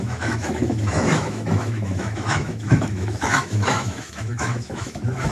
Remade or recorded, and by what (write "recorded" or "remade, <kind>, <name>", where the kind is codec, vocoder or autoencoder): remade, autoencoder, DAC-VAE